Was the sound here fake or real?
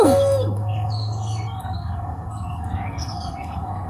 fake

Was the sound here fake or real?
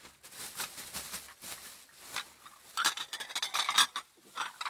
real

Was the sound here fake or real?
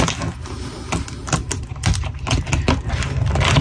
real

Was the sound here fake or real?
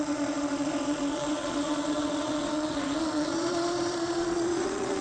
fake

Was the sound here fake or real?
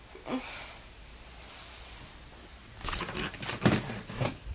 real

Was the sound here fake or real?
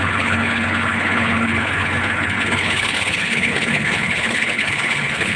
fake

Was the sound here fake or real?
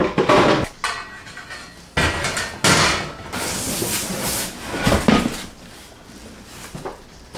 real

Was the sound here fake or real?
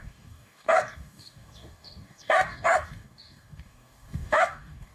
fake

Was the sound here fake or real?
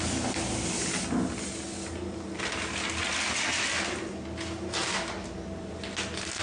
real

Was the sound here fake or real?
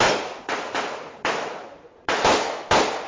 real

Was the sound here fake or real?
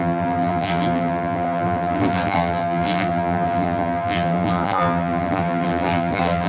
fake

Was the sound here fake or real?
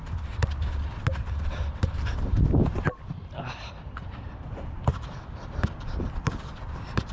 fake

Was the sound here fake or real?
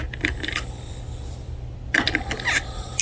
real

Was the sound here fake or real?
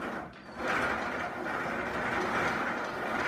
real